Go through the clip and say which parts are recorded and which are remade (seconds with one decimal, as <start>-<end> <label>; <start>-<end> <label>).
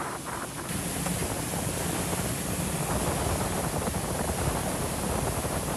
0.0-5.8 recorded